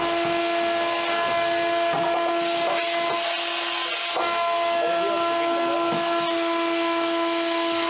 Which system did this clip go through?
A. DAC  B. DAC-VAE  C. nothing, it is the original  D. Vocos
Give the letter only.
C